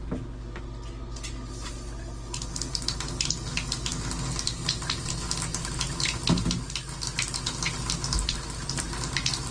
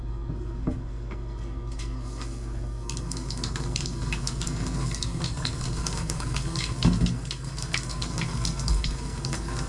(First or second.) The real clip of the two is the first